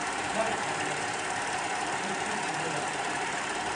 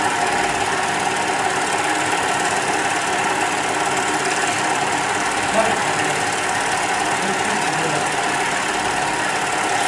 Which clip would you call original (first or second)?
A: second